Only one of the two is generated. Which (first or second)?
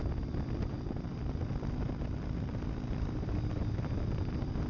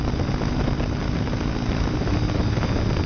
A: first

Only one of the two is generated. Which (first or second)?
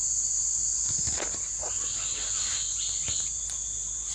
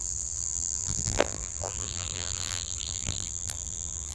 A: second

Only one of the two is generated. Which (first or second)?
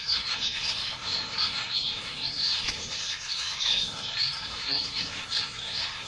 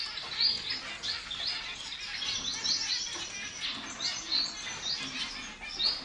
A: first